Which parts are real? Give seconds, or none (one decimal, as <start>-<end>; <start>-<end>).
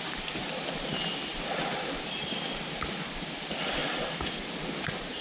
0.0-5.2